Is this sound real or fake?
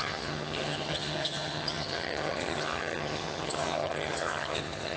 fake